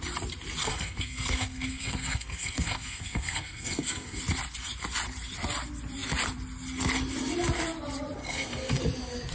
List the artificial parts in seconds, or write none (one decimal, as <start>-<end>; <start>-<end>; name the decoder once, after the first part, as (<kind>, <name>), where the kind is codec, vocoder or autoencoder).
0.6-4.2 (codec, SNAC); 8.2-8.8

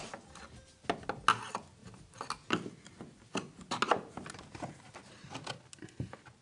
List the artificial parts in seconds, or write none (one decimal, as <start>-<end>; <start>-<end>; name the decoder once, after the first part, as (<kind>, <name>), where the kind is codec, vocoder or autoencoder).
none

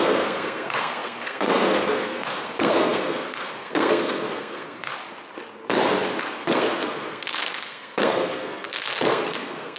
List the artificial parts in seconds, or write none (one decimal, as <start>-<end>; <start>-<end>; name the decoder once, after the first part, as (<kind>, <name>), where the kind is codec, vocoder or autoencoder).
0.0-4.9 (codec, SNAC); 6.2-9.8

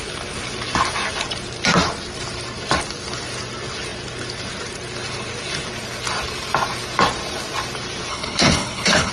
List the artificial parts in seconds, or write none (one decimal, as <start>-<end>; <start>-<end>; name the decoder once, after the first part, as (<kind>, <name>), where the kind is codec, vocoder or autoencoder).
8.1-9.1 (codec, HILCodec)

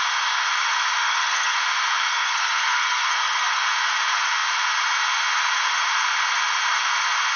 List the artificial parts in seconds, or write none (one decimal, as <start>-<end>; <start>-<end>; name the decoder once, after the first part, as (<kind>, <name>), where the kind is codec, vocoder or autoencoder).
1.0-1.6 (codec, SNAC); 2.1-3.7